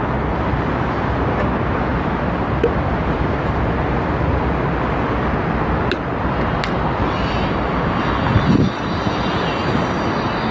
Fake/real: real